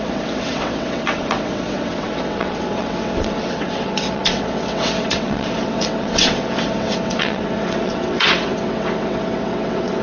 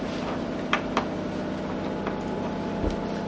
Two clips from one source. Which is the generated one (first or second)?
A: first